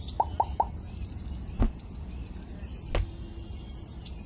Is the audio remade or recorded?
recorded